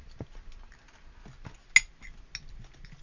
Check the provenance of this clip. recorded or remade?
recorded